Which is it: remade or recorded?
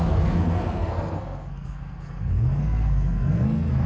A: remade